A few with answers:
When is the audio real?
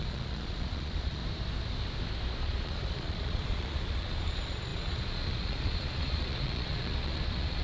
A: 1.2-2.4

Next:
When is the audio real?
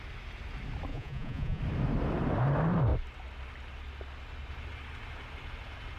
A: 0.0-0.9; 1.6-6.0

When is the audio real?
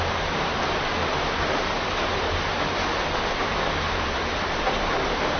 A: 1.0-3.9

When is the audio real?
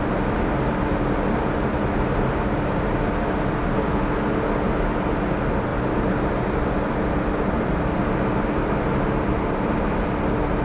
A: 0.0-10.6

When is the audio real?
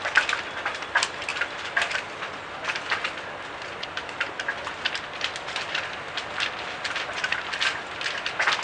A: 0.0-8.6